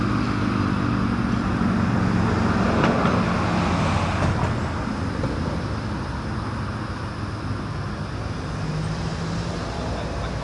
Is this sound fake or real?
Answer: real